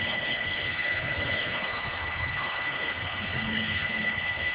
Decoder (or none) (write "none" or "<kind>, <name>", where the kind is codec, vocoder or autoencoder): codec, HILCodec